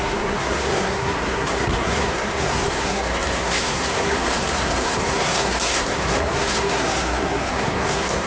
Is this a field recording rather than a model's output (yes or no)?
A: no